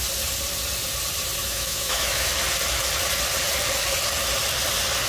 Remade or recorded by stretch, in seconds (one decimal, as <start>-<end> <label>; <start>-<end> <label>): 0.0-1.4 recorded; 1.4-2.3 remade; 2.3-5.1 recorded